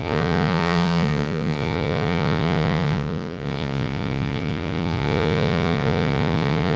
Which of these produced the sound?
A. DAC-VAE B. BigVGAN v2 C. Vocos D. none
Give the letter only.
C